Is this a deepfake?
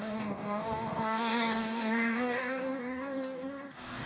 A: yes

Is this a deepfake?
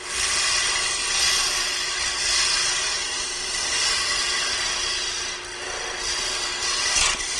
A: no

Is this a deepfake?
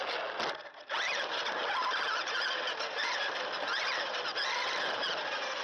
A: no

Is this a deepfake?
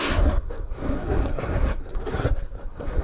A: yes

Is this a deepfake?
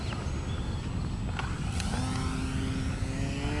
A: no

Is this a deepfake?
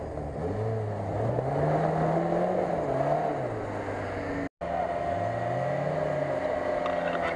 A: no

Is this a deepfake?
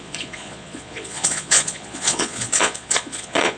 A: yes